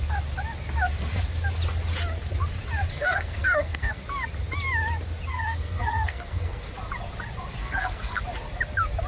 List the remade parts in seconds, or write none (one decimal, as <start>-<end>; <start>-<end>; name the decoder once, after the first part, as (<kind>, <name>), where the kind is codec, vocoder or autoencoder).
2.9-4.0 (codec, SNAC); 5.3-6.7; 7.6-8.2